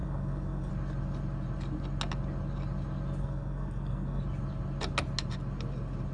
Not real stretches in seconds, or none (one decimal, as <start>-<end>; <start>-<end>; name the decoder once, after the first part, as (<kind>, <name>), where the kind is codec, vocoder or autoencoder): 0.0-0.7 (codec, SNAC); 3.2-4.2